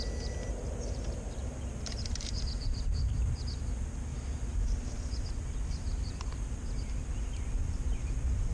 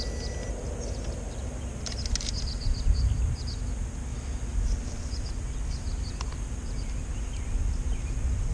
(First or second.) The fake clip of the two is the first